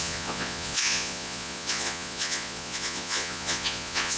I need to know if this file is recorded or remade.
remade